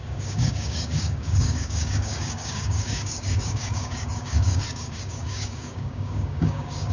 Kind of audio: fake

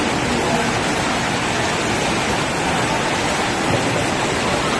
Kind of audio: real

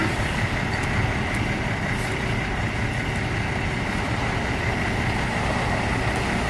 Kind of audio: real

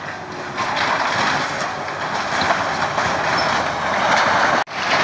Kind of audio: real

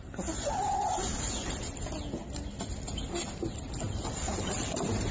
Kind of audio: real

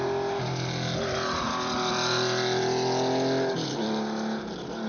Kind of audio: real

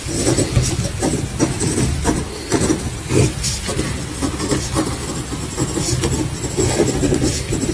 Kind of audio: real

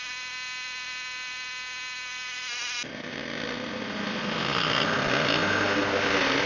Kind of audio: real